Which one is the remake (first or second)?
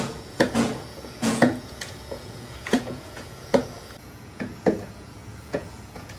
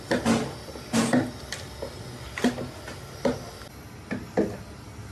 first